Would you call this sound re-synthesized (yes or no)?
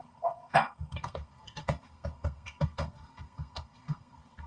yes